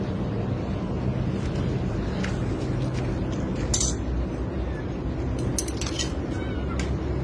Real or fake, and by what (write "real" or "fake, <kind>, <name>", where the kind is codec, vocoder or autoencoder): real